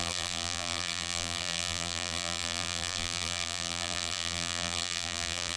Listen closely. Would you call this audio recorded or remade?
remade